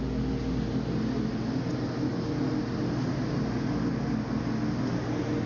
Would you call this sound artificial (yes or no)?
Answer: no